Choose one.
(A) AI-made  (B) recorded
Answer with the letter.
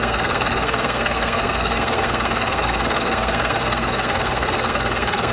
A